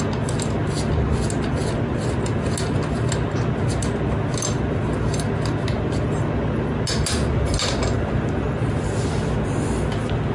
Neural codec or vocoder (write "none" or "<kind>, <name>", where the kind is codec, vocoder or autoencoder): none